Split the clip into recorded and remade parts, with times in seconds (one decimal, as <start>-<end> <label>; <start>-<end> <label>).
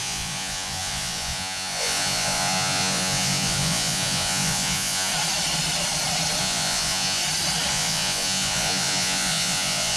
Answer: 0.0-5.1 remade; 5.1-6.4 recorded; 6.4-7.2 remade; 7.2-7.7 recorded; 7.7-10.0 remade